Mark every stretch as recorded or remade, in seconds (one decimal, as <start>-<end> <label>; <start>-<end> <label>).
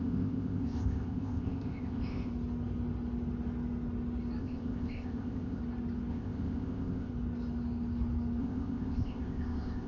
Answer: 0.0-2.3 remade; 2.3-4.4 recorded; 4.4-5.6 remade; 5.6-6.1 recorded; 6.1-7.1 remade; 7.1-8.4 recorded; 8.4-9.9 remade